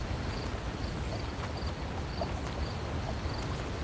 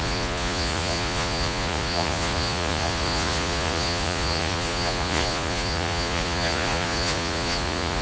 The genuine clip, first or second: first